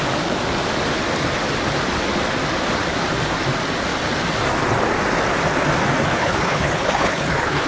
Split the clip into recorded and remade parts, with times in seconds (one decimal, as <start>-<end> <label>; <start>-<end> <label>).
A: 0.0-6.2 recorded; 6.2-7.7 remade